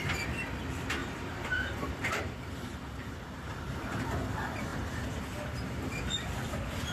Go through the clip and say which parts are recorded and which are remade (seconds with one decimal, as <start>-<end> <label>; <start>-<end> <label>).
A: 0.0-1.0 recorded; 1.0-3.6 remade; 3.6-6.9 recorded